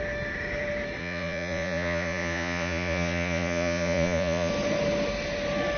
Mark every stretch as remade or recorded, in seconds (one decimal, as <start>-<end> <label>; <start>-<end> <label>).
0.0-1.0 recorded; 1.0-4.5 remade; 4.5-5.8 recorded